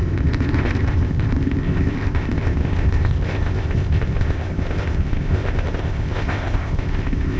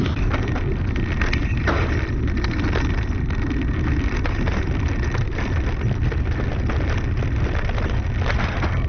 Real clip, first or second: second